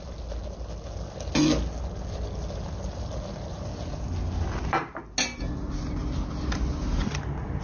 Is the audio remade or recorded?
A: recorded